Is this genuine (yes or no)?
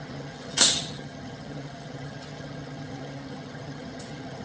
no